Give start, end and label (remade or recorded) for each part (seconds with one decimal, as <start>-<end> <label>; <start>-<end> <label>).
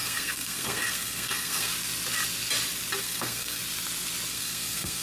0.0-1.7 remade; 1.7-3.0 recorded; 3.0-3.6 remade; 3.6-4.3 recorded; 4.3-5.0 remade